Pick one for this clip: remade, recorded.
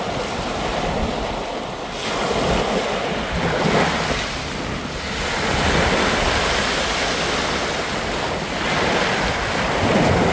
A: recorded